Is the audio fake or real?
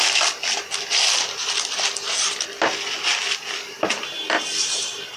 real